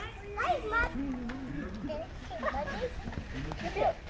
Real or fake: real